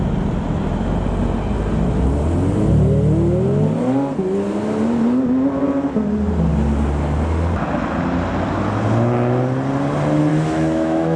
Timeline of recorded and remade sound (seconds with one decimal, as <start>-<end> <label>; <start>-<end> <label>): 0.0-10.3 recorded; 10.3-11.2 remade